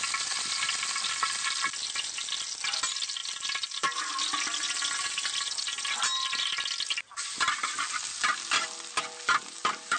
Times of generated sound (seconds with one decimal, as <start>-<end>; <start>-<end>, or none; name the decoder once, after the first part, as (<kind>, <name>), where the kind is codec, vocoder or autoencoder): none